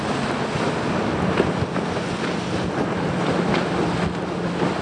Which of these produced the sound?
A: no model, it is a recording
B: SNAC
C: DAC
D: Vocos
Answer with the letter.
A